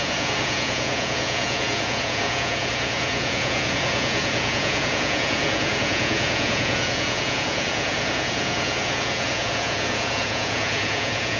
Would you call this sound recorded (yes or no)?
no